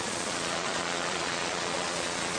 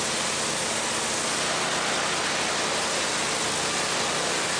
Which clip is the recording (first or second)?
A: second